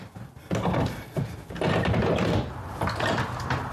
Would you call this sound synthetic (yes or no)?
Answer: no